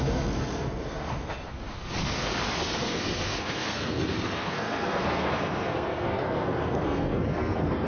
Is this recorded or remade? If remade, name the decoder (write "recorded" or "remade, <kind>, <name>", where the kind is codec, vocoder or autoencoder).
remade, codec, SNAC